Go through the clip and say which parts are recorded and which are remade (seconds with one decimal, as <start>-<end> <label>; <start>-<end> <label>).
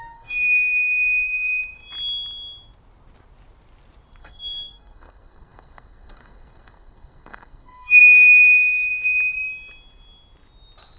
0.0-1.6 remade; 1.6-4.2 recorded; 4.2-8.9 remade; 8.9-11.0 recorded